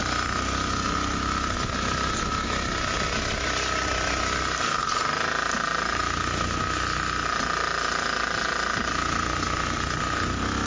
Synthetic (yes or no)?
no